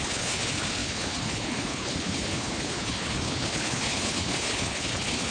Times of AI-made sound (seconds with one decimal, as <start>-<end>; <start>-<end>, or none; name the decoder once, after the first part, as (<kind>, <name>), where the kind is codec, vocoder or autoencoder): 0.0-5.3 (codec, HILCodec)

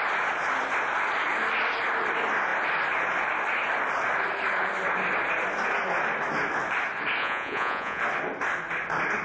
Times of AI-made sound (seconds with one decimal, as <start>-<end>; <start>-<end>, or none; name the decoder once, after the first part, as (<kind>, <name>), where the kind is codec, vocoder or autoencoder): 7.2-8.0 (vocoder, Vocos)